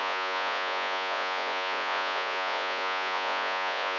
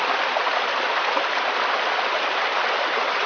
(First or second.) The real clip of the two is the second